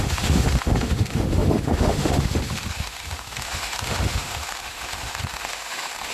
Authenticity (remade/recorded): remade